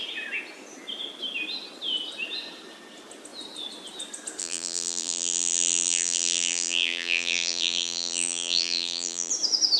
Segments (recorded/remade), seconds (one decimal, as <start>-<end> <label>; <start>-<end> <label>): 0.0-4.4 recorded; 4.4-9.3 remade; 9.3-9.8 recorded